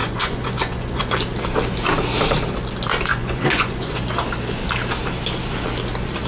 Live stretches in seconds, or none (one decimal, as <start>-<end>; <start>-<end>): 1.1-3.1; 4.0-6.3